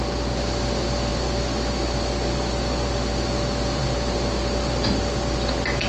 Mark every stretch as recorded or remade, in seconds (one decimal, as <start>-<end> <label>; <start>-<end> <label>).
0.0-5.9 recorded